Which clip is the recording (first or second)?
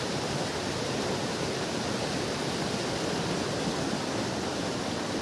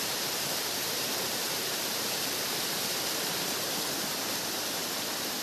first